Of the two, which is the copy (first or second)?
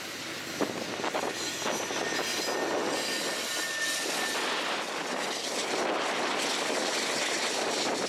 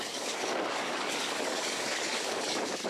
second